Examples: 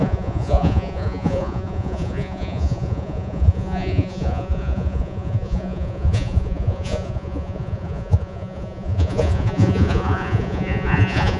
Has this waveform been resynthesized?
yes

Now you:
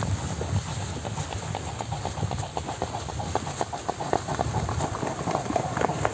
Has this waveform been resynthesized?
no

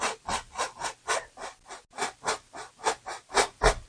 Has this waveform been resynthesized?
no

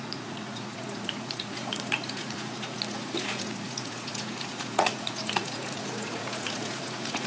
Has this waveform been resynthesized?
yes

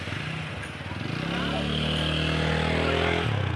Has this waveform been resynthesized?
no